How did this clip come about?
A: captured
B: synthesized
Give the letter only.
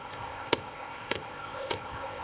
B